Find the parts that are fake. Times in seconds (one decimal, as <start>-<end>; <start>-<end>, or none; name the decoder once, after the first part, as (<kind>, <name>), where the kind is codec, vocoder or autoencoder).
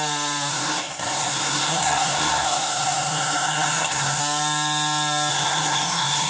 0.5-4.2 (codec, SNAC); 5.3-6.3